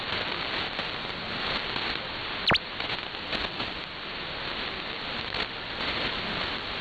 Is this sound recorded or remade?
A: recorded